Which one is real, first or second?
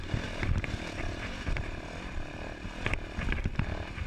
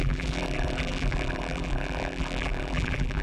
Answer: first